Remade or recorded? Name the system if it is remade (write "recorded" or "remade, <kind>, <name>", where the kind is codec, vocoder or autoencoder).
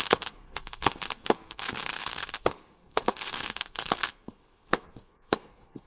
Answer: remade, codec, SNAC